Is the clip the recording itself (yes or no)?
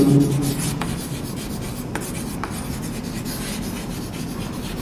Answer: yes